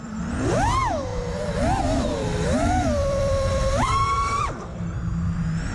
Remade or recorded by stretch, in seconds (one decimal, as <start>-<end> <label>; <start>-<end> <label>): 0.0-1.1 recorded; 1.1-4.4 remade; 4.4-5.7 recorded